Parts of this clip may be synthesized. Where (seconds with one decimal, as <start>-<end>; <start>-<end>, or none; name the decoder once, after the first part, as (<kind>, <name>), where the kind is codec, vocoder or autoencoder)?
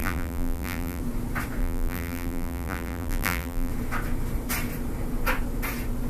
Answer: 0.0-1.0 (vocoder, BigVGAN v2); 1.6-3.7